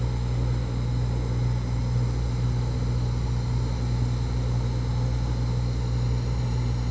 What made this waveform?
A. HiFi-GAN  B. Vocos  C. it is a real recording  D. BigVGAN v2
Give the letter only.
C